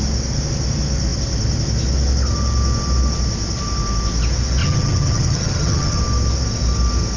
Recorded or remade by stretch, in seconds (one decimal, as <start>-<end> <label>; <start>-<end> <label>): 0.0-4.6 recorded; 4.6-6.0 remade; 6.0-7.2 recorded